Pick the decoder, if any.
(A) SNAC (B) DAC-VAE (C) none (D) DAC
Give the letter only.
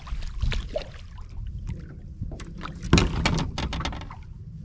C